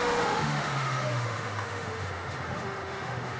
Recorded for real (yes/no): no